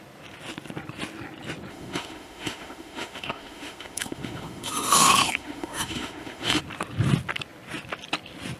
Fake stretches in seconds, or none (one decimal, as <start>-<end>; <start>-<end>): 1.7-6.6